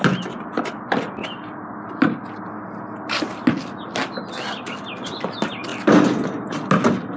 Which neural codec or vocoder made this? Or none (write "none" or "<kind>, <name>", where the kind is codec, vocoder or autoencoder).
none